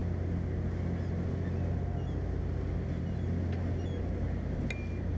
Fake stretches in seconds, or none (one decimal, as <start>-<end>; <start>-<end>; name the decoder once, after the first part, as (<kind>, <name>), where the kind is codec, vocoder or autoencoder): none